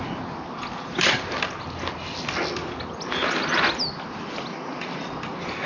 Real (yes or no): yes